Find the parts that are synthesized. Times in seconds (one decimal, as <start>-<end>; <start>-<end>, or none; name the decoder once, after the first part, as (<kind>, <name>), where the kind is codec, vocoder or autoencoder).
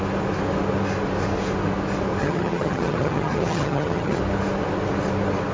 2.2-4.2 (vocoder, HiFi-GAN)